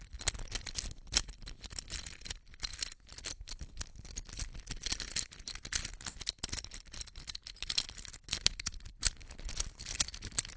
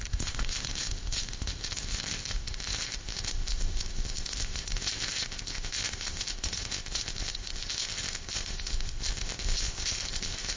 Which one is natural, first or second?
first